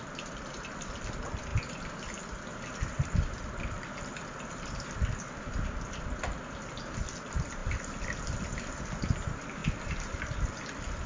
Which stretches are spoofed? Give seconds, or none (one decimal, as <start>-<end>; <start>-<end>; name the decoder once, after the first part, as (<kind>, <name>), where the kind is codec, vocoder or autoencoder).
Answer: none